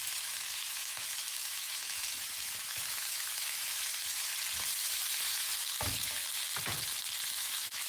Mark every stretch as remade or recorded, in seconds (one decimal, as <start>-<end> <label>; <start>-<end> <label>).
0.0-4.3 remade; 4.3-4.8 recorded; 4.8-6.2 remade; 6.2-7.3 recorded; 7.3-7.9 remade